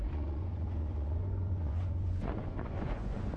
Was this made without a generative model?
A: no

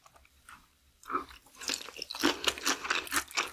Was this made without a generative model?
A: yes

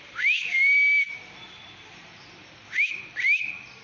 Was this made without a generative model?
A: yes